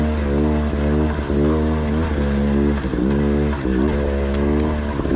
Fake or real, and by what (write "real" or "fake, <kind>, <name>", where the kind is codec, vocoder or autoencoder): real